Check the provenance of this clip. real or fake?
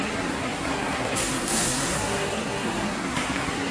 fake